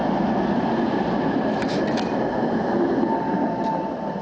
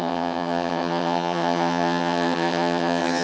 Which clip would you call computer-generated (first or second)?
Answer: second